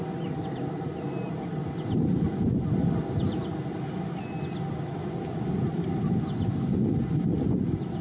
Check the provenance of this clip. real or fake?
real